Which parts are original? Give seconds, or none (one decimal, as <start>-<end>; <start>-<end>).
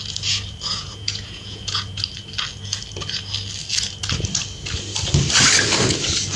0.0-0.7; 2.0-6.4